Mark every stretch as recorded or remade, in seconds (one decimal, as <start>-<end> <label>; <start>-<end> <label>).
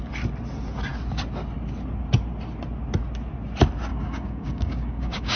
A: 0.0-3.9 recorded; 3.9-5.4 remade